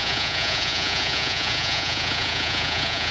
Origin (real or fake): fake